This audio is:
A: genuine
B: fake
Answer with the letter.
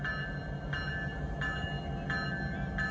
A